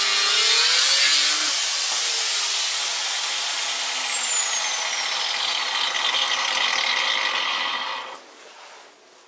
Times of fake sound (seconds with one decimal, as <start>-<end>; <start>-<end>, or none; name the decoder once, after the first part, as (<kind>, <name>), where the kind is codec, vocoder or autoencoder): none